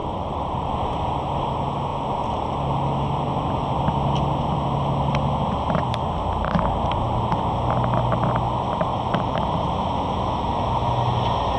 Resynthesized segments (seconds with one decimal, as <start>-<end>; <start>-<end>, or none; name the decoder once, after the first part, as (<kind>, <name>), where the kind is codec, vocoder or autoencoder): 0.0-0.7 (vocoder, BigVGAN v2); 8.9-9.7